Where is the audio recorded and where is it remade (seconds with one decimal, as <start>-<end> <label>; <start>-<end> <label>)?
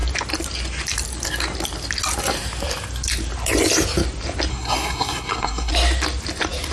0.0-4.5 recorded; 4.5-5.7 remade; 5.7-6.7 recorded